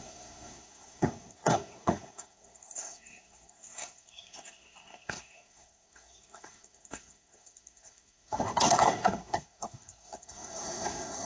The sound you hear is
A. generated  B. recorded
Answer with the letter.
A